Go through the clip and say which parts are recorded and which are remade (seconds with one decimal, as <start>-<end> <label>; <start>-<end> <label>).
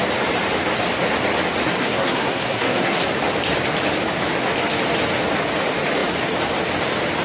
0.0-1.8 recorded; 1.8-3.0 remade; 3.0-7.2 recorded